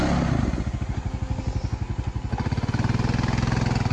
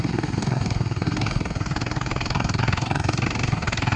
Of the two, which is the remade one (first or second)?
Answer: second